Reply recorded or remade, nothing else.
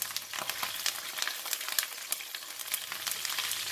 recorded